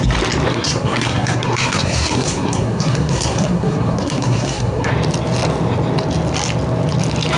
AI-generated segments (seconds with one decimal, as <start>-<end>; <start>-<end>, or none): 0.5-4.9

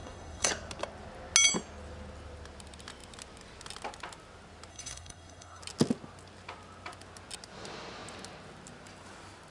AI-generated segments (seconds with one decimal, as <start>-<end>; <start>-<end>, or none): 0.0-0.5; 4.7-5.6

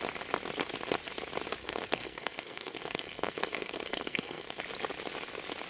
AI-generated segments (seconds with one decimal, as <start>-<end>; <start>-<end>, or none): 1.6-4.6

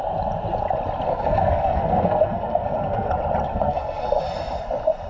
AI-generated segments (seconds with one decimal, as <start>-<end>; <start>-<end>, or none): 1.1-3.1; 3.5-4.2